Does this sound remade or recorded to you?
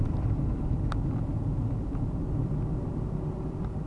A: recorded